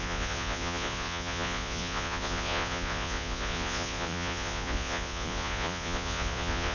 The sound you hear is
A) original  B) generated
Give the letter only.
B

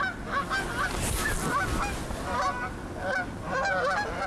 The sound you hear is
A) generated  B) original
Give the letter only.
B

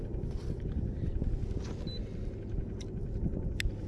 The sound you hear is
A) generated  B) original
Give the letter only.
B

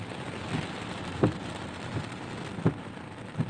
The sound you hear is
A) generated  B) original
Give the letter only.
B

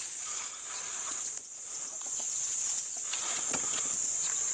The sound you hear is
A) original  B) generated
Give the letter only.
B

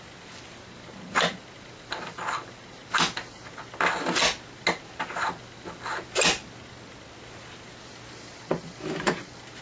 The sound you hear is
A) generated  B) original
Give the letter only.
B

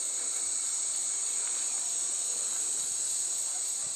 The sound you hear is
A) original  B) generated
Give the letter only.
A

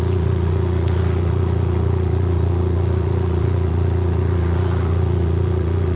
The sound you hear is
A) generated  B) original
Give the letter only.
A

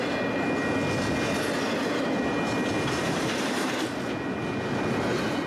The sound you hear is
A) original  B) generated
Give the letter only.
A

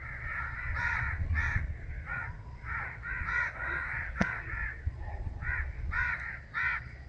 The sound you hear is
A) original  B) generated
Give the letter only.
B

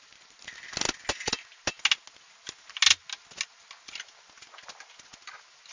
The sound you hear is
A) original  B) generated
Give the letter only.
A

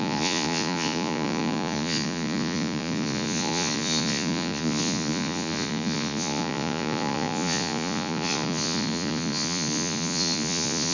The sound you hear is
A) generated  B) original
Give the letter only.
A